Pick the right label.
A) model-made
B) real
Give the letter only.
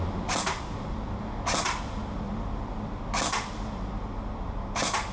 B